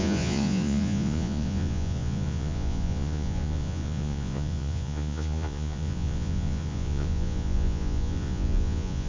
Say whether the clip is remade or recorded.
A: remade